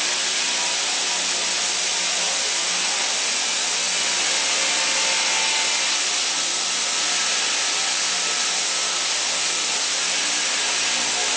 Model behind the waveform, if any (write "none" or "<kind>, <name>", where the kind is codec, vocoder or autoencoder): none